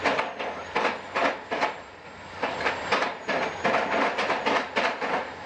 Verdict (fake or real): real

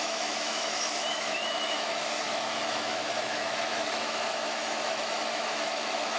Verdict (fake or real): fake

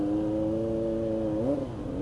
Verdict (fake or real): real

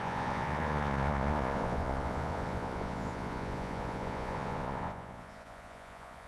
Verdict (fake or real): fake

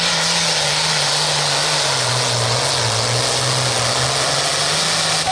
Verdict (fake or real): real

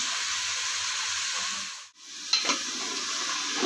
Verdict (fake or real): real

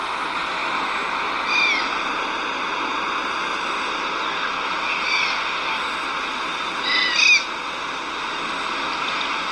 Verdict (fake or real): real